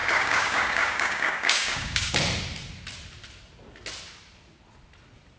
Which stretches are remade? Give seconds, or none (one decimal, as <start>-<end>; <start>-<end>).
0.0-2.1